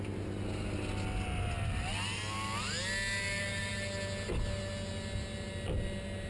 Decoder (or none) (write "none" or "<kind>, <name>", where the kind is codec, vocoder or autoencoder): none